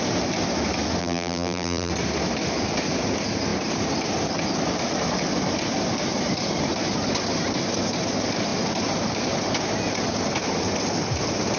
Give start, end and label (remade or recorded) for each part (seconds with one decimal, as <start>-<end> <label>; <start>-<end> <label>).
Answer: 0.0-1.0 recorded; 1.0-1.9 remade; 1.9-11.6 recorded